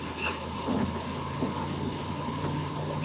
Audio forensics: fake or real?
fake